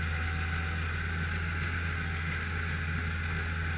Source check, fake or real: real